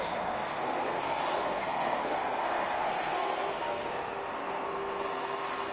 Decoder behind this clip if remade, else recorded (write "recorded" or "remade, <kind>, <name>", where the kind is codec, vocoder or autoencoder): remade, codec, SNAC